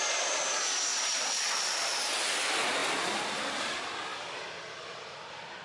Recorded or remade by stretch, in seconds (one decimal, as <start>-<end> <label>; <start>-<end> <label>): 0.0-0.9 recorded; 0.9-2.1 remade; 2.1-2.8 recorded; 2.8-3.6 remade; 3.6-4.1 recorded; 4.1-5.6 remade